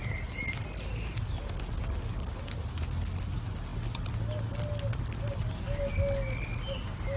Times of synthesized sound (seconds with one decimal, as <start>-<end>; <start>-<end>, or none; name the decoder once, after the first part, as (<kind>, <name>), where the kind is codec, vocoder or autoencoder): 2.3-2.8 (vocoder, BigVGAN v2)